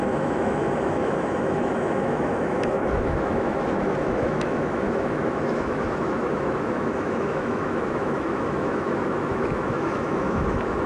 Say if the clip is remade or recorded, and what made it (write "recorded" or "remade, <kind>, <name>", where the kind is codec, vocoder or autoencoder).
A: remade, autoencoder, DAC-VAE